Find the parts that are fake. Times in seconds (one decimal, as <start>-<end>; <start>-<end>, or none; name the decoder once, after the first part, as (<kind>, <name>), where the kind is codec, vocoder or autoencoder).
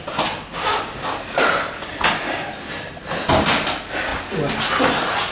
none